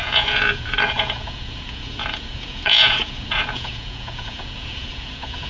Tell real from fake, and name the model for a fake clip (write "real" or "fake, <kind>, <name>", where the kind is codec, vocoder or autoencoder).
fake, vocoder, Vocos